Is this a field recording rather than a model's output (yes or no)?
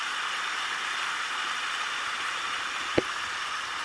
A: yes